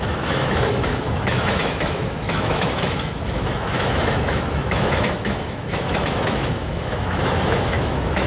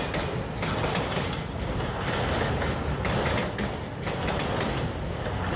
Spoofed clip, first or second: first